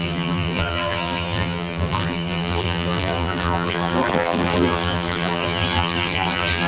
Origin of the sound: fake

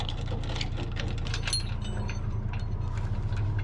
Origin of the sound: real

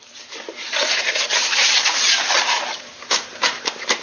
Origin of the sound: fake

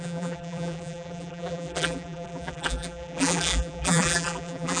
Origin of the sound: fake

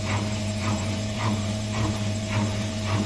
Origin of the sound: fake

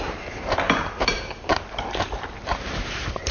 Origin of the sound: fake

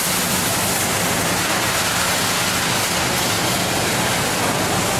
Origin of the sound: real